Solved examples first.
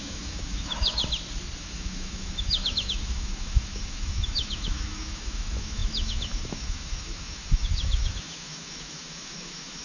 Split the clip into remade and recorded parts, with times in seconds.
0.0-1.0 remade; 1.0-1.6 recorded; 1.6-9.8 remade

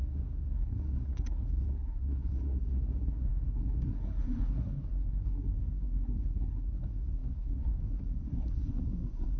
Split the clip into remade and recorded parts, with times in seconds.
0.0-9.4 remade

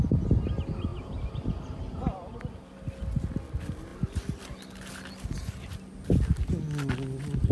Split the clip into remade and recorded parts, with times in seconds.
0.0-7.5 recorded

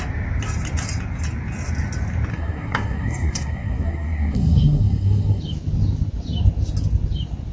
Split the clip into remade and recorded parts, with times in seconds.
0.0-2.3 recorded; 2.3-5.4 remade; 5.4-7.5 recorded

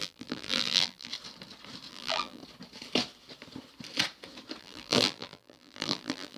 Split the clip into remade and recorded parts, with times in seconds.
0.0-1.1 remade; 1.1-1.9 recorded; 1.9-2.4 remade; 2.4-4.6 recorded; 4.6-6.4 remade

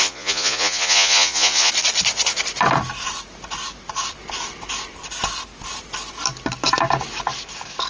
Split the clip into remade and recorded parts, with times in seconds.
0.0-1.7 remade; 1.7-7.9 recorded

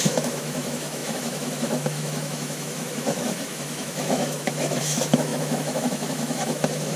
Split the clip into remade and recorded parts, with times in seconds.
0.0-7.0 remade